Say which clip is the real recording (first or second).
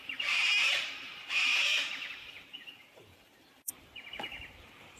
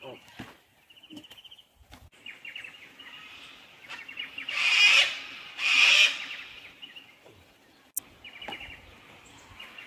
second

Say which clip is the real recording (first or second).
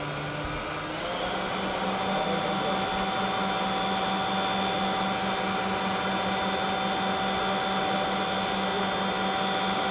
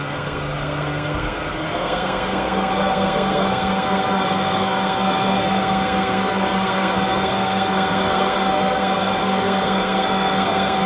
first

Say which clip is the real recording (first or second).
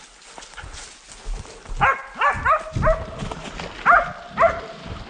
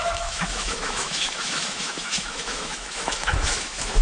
first